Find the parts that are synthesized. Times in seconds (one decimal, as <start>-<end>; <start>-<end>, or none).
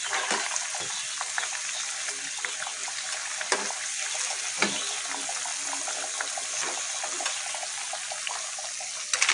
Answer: none